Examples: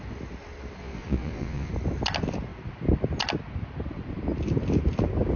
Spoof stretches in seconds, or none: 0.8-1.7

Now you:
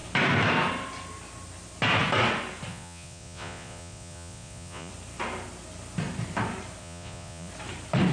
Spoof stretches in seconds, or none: 2.7-4.9; 6.8-7.5

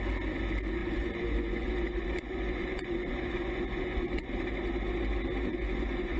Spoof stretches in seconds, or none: 0.8-4.3; 5.5-6.2

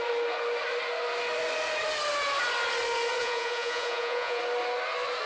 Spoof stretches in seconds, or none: 3.2-4.4

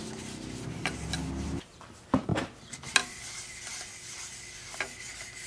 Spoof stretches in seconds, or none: none

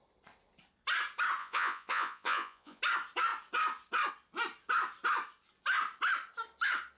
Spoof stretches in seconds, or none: 1.4-2.8

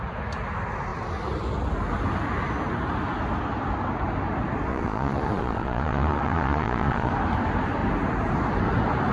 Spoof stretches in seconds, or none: 4.7-7.1

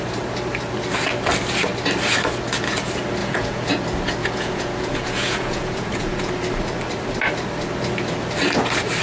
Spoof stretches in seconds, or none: 3.2-3.7; 4.2-6.3